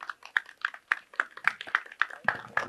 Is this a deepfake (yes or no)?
no